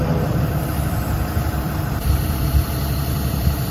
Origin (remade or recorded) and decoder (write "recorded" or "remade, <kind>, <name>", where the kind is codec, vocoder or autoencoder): remade, vocoder, BigVGAN v2